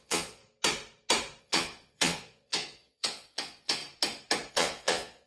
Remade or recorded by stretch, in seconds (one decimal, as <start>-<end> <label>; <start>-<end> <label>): 0.0-0.4 remade; 0.4-1.4 recorded; 1.4-3.8 remade; 3.8-4.5 recorded; 4.5-5.3 remade